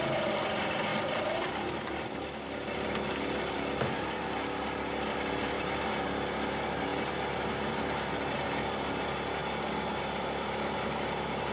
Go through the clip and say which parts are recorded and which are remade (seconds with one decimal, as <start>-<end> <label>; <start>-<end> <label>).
0.0-11.5 recorded